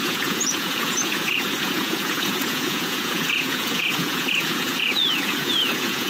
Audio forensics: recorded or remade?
remade